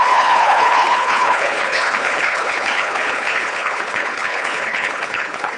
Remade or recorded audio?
remade